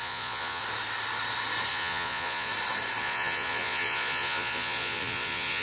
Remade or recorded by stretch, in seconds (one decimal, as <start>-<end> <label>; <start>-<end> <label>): 0.0-0.6 remade; 0.6-1.7 recorded; 1.7-2.5 remade; 2.5-3.0 recorded; 3.0-5.6 remade